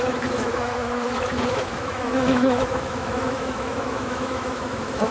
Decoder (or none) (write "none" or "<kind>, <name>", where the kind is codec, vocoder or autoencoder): autoencoder, DAC-VAE